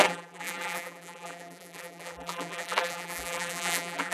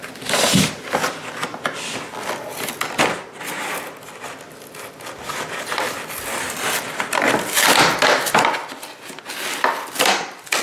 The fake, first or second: first